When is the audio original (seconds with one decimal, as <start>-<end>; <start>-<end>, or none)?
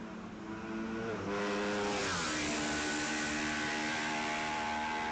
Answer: 0.0-5.1